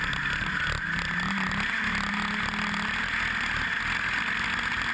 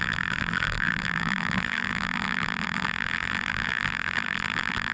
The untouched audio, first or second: first